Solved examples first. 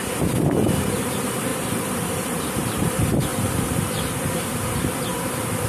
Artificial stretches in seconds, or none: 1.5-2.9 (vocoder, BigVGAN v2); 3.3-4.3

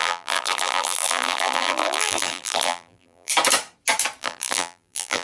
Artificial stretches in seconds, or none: 0.0-3.3 (vocoder, BigVGAN v2); 4.2-5.2